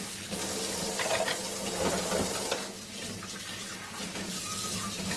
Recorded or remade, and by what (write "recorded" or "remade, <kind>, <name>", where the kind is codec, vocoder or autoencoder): recorded